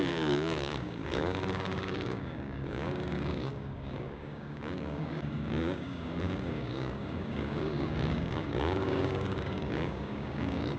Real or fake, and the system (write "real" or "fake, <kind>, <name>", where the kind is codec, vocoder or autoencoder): fake, codec, DAC